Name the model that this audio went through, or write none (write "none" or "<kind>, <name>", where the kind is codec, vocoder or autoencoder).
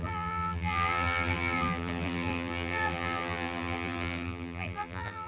vocoder, BigVGAN v2